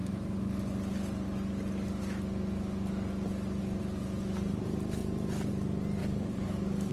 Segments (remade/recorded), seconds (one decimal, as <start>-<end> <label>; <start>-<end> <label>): 0.0-6.0 recorded; 6.0-6.9 remade